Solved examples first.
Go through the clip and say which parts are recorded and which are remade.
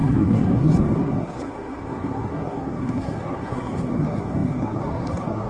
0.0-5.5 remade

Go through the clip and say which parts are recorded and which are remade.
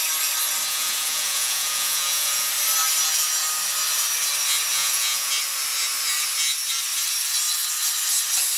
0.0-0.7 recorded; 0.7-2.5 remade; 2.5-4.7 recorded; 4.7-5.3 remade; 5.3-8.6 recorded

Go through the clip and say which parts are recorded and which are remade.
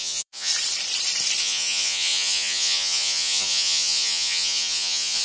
0.0-0.5 remade; 0.5-1.4 recorded; 1.4-5.2 remade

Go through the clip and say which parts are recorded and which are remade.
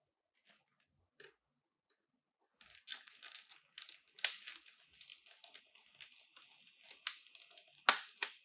0.0-8.4 recorded